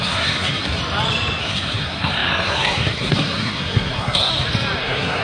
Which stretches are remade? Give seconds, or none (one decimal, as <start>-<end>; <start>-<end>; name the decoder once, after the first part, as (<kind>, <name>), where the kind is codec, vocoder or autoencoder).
0.0-0.8 (codec, SNAC); 1.4-4.3; 4.8-5.2